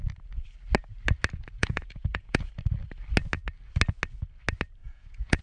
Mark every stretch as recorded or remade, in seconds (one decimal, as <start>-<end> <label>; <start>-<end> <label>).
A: 0.0-1.6 recorded; 1.6-2.5 remade; 2.5-4.8 recorded; 4.8-5.4 remade